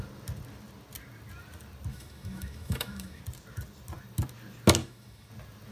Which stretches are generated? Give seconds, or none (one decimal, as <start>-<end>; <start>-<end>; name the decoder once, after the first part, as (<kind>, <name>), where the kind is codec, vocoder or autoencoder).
1.9-3.2 (autoencoder, DAC-VAE); 4.8-5.3